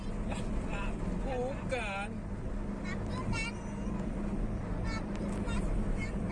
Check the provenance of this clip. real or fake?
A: real